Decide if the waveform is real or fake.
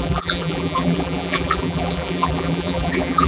fake